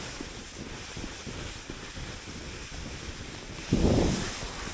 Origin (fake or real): real